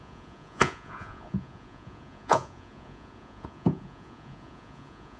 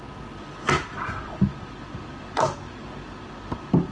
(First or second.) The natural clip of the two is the second